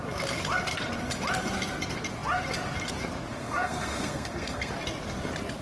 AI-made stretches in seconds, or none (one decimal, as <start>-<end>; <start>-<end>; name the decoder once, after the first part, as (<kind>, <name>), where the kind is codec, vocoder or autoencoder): 3.3-4.7 (codec, SNAC)